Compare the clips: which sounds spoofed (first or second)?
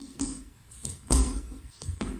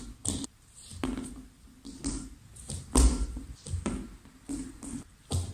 first